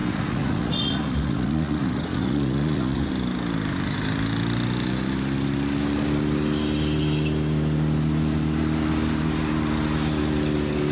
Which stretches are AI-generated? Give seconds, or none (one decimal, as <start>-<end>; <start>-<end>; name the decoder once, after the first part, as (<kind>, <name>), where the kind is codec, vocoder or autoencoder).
0.0-3.1 (vocoder, Vocos)